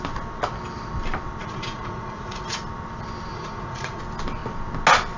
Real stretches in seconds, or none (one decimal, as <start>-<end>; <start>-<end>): 0.0-1.4; 2.6-3.3; 4.0-5.2